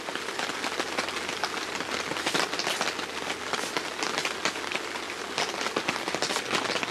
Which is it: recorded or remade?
recorded